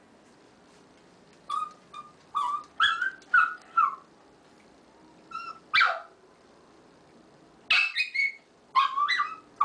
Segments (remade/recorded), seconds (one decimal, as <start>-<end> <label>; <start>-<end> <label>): 0.0-9.6 recorded